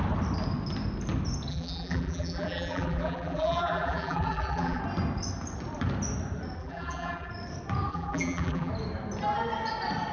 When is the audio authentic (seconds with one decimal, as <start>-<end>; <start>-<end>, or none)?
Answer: 0.0-1.5; 4.8-6.6; 7.3-7.9; 8.7-10.1